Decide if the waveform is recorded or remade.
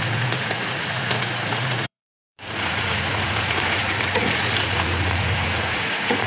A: remade